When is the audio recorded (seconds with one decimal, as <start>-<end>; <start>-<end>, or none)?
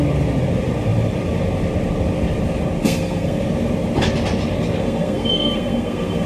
0.0-2.8; 3.4-4.8